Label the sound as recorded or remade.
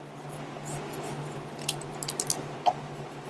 recorded